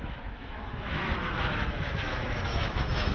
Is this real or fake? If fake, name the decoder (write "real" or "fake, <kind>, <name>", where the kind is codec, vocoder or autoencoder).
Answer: fake, autoencoder, DAC-VAE